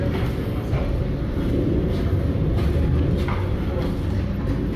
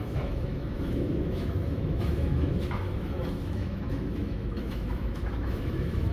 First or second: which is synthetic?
second